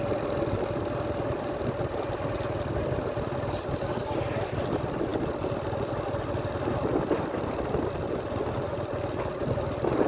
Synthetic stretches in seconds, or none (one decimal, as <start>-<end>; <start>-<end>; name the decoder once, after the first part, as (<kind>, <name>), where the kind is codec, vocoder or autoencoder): none